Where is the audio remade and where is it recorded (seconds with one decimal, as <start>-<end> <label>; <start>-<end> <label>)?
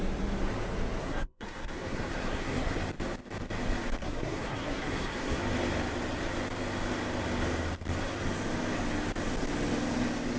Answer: 0.0-1.0 recorded; 1.0-2.8 remade; 2.8-4.0 recorded; 4.0-5.4 remade; 5.4-10.4 recorded